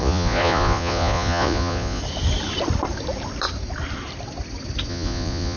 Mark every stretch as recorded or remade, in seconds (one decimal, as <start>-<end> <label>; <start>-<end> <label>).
0.0-2.0 remade; 2.0-4.9 recorded; 4.9-5.6 remade

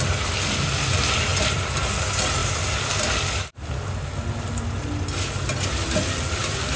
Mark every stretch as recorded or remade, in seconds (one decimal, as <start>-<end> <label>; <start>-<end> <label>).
0.0-6.8 recorded

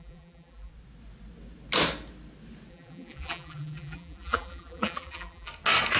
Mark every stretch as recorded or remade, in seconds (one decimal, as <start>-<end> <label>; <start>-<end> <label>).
0.0-0.7 remade; 0.7-2.7 recorded; 2.7-5.5 remade; 5.5-6.0 recorded

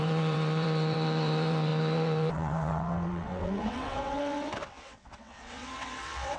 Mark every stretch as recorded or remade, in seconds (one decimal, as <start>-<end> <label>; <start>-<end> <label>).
0.0-6.4 remade